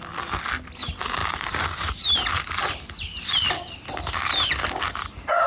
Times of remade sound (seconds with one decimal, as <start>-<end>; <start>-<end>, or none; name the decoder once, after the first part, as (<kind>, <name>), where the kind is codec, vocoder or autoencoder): none